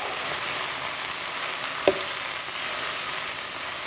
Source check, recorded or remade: recorded